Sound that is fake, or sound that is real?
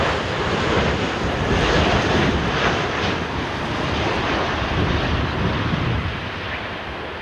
fake